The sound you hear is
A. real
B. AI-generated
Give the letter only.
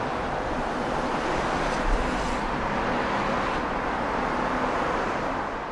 A